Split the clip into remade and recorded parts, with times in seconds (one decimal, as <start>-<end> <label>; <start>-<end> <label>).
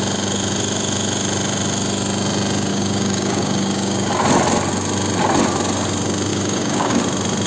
0.0-2.7 recorded; 2.7-4.1 remade; 4.1-6.3 recorded; 6.3-7.0 remade; 7.0-7.5 recorded